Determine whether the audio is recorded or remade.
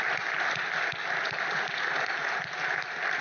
recorded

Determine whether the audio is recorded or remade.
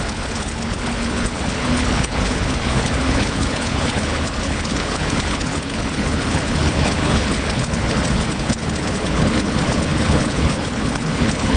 remade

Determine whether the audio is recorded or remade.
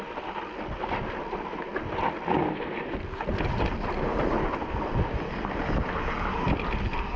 recorded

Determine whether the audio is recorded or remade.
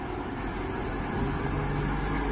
recorded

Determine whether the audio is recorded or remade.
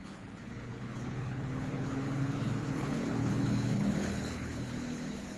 remade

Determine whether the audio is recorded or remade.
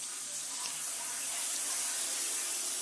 recorded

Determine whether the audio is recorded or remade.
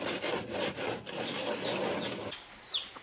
recorded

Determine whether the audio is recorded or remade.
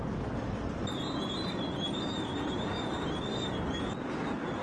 recorded